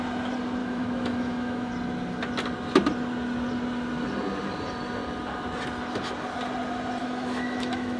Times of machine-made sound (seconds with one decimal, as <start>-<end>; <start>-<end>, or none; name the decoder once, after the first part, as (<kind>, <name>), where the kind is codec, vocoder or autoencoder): 0.6-1.7 (autoencoder, DAC-VAE); 7.0-8.0